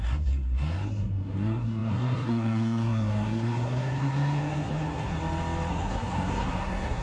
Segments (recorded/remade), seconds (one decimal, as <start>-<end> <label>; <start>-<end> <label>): 0.0-5.2 remade; 5.2-5.7 recorded; 5.7-7.0 remade